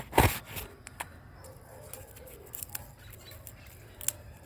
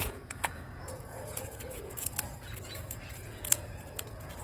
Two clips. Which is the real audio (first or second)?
first